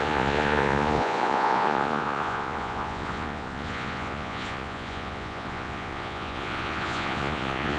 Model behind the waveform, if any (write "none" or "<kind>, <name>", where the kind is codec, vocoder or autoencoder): vocoder, Vocos